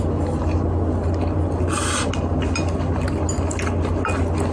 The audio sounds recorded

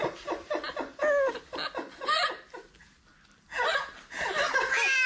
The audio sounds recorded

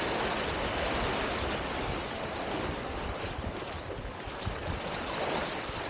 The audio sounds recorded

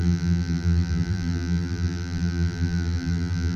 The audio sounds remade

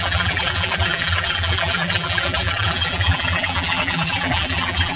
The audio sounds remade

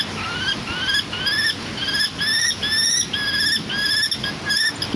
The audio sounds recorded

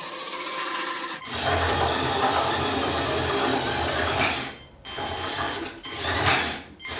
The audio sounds remade